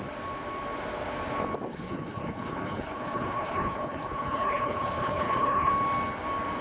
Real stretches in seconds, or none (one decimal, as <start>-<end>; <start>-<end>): 0.0-1.7; 5.7-6.6